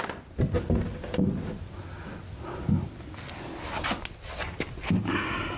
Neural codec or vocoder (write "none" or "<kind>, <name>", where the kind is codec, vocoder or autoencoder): none